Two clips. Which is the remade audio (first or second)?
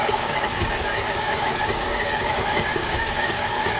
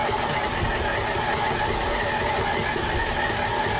first